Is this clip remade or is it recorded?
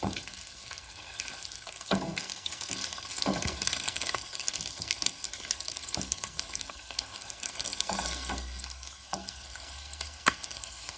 remade